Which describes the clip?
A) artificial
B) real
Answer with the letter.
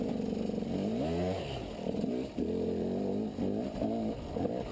B